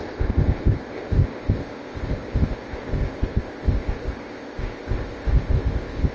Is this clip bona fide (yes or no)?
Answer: no